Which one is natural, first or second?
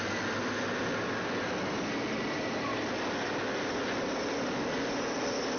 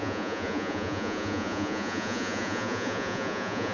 first